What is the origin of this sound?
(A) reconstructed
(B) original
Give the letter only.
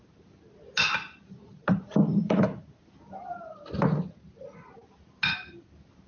B